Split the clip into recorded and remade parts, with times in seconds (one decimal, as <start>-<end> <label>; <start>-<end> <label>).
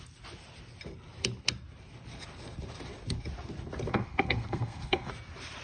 0.0-3.9 recorded; 3.9-5.1 remade; 5.1-5.6 recorded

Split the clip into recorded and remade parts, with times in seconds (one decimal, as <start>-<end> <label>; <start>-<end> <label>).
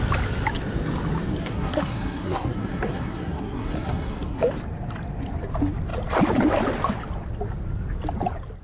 0.0-1.4 recorded; 1.4-4.4 remade; 4.4-8.6 recorded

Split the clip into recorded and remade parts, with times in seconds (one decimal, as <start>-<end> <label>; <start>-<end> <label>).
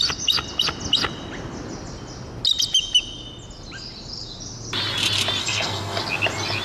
0.0-5.4 recorded; 5.4-6.0 remade; 6.0-6.6 recorded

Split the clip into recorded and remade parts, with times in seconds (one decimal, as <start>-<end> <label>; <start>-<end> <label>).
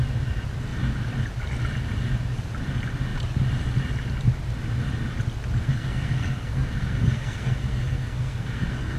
0.0-5.6 recorded; 5.6-9.0 remade